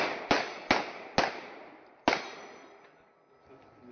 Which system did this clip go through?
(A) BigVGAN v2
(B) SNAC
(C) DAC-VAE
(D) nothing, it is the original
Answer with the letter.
D